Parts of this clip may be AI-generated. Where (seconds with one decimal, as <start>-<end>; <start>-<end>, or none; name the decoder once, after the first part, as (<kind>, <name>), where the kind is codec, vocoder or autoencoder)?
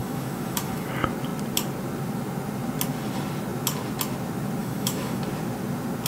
0.0-0.9 (autoencoder, DAC-VAE); 4.6-5.2